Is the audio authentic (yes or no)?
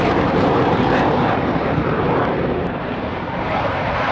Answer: no